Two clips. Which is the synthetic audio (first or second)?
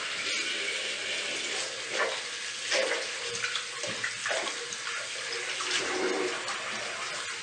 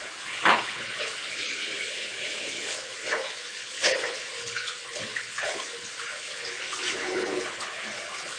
second